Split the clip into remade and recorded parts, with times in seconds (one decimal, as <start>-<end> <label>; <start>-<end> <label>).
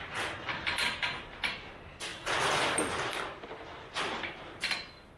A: 0.0-2.1 recorded; 2.1-4.6 remade; 4.6-5.2 recorded